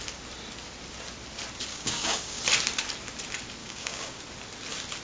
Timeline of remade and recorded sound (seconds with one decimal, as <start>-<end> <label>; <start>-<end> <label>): 0.0-1.7 recorded; 1.7-2.4 remade; 2.4-3.6 recorded; 3.6-4.2 remade; 4.2-5.0 recorded